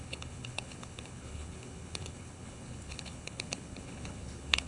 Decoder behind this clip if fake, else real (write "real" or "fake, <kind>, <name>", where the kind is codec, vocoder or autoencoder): fake, codec, HILCodec